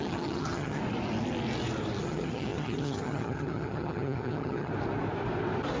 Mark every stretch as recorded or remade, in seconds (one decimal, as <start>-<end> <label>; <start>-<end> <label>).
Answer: 0.0-0.8 remade; 0.8-2.0 recorded; 2.0-4.7 remade; 4.7-5.8 recorded